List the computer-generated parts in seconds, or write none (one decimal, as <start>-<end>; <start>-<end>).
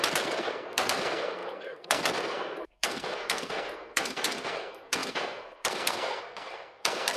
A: 0.0-7.2